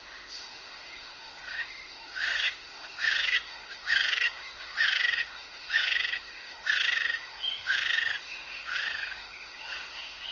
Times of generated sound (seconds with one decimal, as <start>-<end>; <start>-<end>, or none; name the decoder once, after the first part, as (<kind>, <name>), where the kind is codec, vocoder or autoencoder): 0.0-10.3 (autoencoder, DAC-VAE)